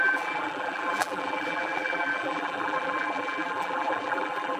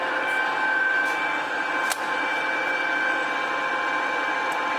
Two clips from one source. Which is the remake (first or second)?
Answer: first